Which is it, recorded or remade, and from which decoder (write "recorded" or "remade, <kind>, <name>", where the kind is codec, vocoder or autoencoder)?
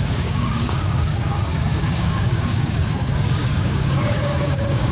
remade, codec, DAC